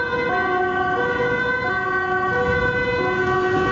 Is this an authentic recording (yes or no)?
yes